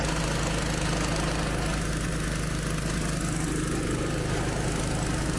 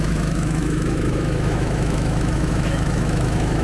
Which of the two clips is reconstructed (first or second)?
second